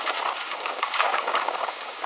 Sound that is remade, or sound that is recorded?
remade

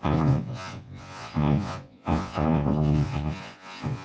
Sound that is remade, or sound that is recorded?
remade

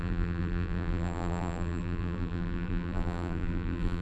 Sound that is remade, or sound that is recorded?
remade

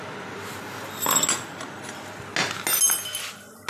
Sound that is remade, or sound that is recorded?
recorded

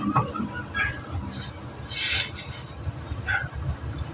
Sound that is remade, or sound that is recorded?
recorded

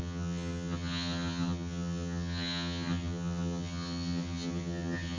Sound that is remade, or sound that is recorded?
remade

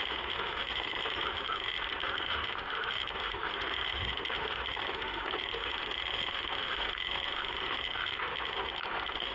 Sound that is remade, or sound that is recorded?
remade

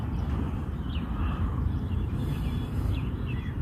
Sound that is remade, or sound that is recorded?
remade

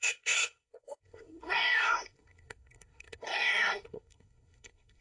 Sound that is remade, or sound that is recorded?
remade